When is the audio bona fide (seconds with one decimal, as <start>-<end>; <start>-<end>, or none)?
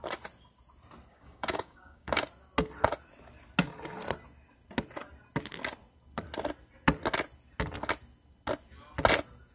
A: 0.0-1.1; 2.2-9.5